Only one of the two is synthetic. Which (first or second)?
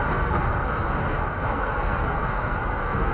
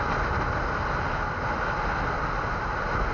first